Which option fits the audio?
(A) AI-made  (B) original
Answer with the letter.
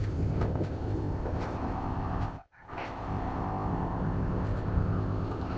A